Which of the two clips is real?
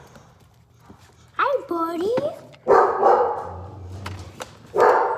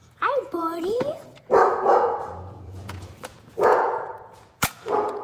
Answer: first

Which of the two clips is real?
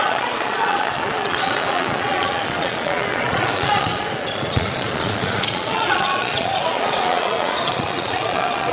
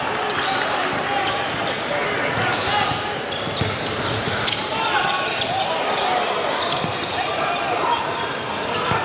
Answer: second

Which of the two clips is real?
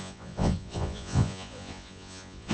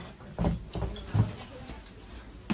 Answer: second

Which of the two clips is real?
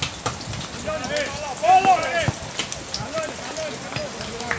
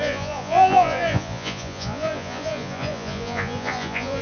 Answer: first